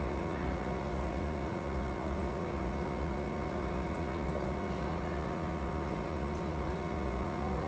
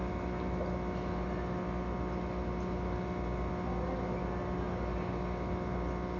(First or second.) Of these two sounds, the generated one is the first